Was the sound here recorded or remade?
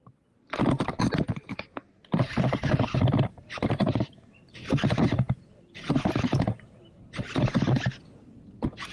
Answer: recorded